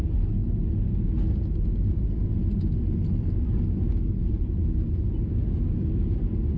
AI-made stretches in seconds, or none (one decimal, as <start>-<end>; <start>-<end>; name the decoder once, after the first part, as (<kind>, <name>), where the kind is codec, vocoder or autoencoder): none